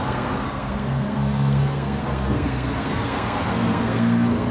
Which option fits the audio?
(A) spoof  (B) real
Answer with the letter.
A